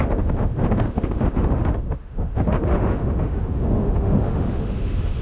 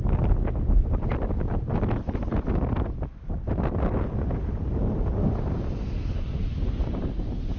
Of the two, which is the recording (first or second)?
second